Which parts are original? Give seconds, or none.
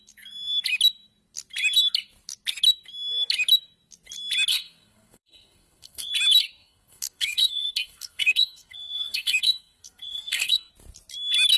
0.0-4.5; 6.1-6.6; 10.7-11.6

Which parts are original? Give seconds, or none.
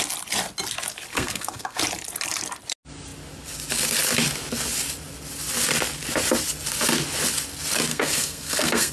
0.0-1.1; 1.8-7.9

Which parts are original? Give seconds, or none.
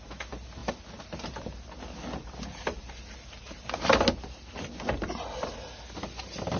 0.0-6.6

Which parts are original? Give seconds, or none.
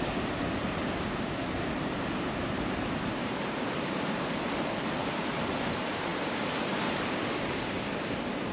none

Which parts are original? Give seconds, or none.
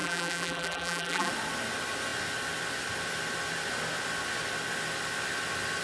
1.3-5.8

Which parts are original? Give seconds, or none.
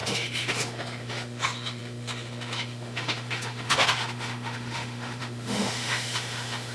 none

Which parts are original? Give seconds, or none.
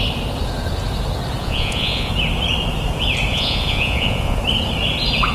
0.0-1.4; 2.1-3.3; 4.4-5.3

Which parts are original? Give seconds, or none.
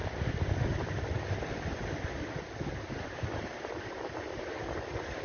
0.0-5.2